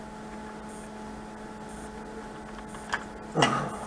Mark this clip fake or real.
real